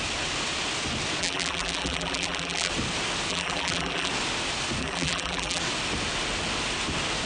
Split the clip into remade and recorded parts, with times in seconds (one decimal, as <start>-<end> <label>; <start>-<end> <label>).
0.0-1.2 recorded; 1.2-2.7 remade; 2.7-3.3 recorded; 3.3-4.1 remade; 4.1-4.8 recorded; 4.8-5.6 remade; 5.6-7.3 recorded